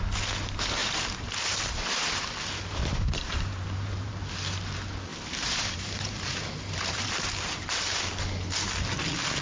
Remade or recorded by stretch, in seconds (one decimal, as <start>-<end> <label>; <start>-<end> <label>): 0.0-0.8 recorded; 0.8-2.2 remade; 2.2-2.8 recorded; 2.8-4.3 remade; 4.3-5.1 recorded; 5.1-7.7 remade; 7.7-9.4 recorded